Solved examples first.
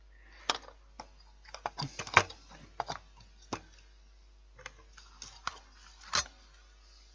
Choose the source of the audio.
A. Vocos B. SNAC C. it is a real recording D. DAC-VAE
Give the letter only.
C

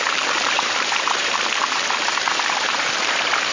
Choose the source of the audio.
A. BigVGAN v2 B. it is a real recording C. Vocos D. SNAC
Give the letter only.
A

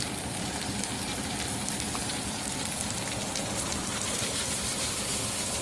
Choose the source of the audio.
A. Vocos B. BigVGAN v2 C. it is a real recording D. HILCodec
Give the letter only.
B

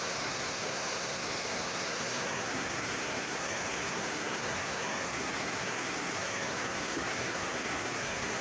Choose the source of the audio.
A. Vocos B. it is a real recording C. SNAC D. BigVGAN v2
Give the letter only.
C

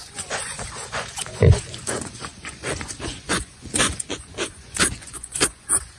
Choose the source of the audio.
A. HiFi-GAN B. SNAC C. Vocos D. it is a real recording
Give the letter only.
C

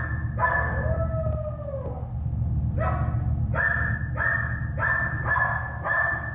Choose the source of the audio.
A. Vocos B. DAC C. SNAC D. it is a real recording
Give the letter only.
D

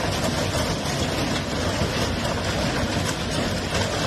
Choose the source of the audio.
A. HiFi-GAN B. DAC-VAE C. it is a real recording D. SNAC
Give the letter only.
C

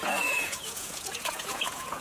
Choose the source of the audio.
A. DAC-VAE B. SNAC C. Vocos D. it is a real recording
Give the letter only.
C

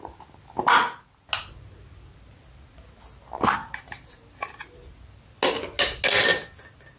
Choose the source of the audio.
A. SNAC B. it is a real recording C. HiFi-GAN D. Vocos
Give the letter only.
B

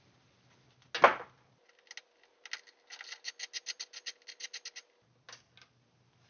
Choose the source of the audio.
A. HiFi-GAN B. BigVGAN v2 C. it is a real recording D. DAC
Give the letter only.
C